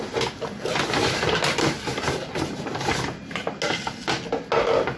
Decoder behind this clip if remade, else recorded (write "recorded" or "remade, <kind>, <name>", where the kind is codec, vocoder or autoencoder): recorded